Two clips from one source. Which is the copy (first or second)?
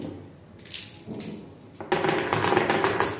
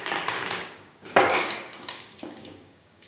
second